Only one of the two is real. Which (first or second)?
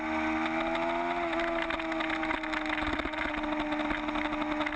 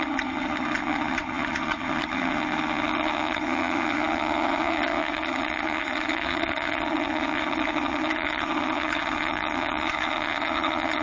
first